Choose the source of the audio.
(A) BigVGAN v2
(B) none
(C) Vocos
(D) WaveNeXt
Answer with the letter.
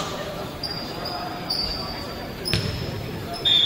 A